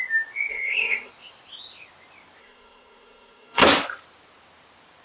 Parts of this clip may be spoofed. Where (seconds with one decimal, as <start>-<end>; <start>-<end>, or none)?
0.5-1.1; 2.4-3.6